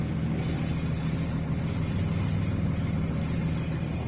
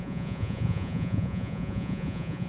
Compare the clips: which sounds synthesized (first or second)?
second